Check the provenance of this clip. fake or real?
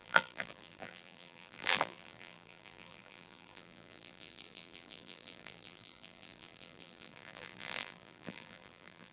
fake